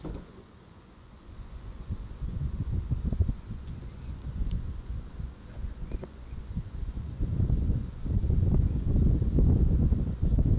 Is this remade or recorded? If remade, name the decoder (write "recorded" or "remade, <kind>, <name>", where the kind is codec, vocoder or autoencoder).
remade, vocoder, Vocos